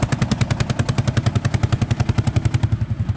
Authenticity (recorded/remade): recorded